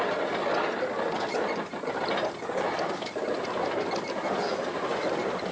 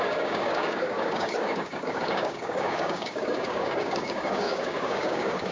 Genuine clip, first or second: first